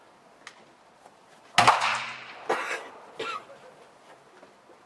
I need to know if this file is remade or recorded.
recorded